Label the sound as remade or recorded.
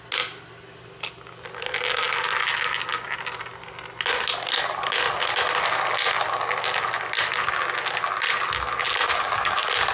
recorded